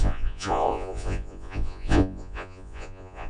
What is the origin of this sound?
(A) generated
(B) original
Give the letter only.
A